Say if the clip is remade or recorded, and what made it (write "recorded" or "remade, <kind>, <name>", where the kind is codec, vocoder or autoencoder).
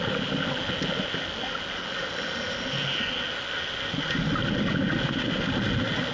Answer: recorded